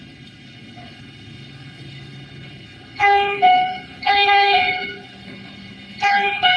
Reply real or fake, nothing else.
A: fake